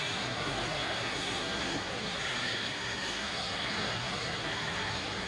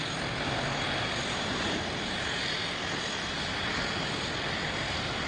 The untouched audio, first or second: second